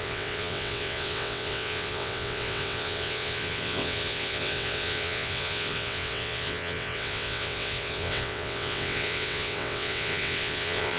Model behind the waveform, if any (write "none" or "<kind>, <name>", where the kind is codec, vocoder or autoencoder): vocoder, WaveNeXt